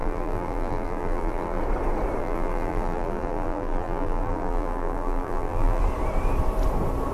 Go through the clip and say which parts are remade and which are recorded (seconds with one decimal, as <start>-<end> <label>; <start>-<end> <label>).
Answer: 0.0-1.6 remade; 1.6-2.2 recorded; 2.2-5.8 remade; 5.8-7.1 recorded